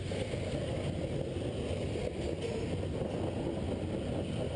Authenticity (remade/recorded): recorded